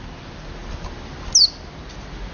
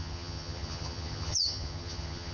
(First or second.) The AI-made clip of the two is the second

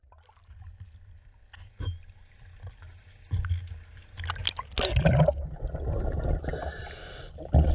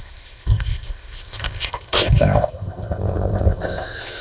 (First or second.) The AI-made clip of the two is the second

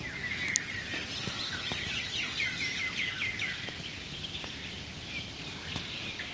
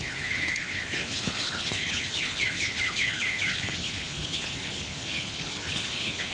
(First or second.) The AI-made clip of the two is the second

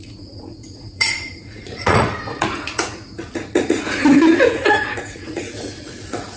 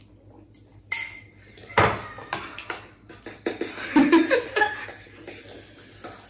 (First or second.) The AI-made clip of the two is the first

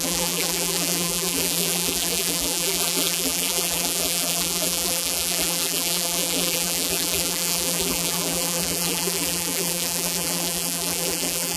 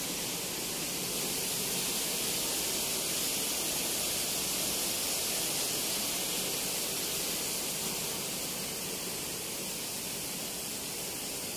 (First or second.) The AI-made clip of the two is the first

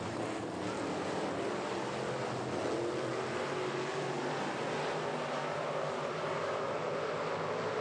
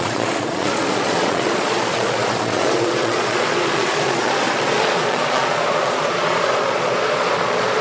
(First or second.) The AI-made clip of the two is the second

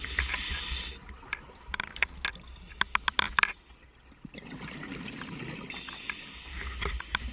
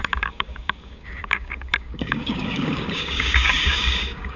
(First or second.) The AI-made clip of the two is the second